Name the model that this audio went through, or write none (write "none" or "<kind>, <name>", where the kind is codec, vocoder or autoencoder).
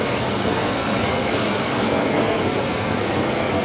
codec, SNAC